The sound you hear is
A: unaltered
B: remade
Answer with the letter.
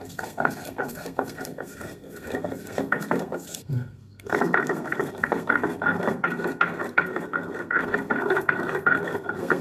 B